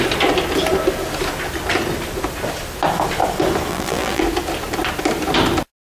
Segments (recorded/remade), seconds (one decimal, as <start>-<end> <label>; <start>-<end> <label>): 0.0-3.7 recorded; 3.7-4.2 remade; 4.2-5.8 recorded